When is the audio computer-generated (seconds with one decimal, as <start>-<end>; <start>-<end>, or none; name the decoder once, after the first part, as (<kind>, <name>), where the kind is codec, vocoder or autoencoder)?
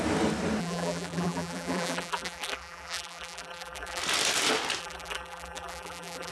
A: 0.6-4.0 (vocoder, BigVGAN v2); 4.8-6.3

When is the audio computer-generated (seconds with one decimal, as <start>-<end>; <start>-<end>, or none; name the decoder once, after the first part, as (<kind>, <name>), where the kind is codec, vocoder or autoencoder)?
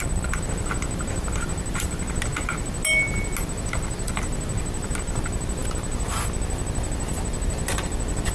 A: none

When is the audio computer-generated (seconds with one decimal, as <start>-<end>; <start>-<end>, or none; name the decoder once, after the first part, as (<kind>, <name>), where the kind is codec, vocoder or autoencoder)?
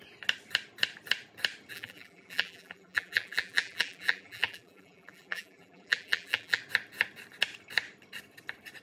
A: 1.7-6.6 (vocoder, BigVGAN v2)